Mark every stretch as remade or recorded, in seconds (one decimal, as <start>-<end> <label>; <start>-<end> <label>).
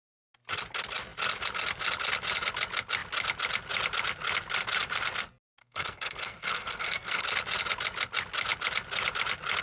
0.0-5.6 recorded; 5.6-7.2 remade; 7.2-9.6 recorded